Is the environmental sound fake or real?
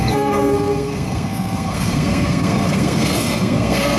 fake